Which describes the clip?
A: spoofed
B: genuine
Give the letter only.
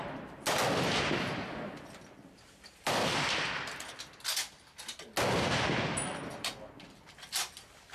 B